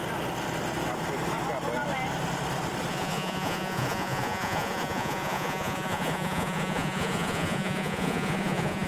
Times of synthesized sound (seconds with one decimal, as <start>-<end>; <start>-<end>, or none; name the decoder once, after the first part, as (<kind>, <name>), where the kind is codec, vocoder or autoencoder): 2.9-8.9 (vocoder, Vocos)